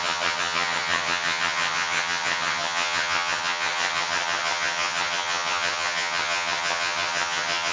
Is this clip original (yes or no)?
no